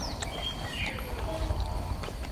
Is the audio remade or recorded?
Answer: recorded